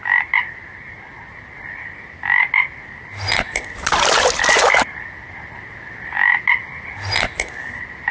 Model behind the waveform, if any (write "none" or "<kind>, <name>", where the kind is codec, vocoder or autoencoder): none